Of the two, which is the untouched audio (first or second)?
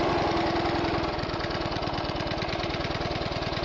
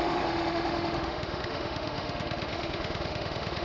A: first